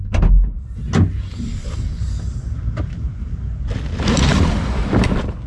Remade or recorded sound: recorded